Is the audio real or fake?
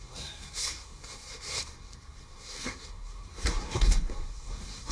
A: fake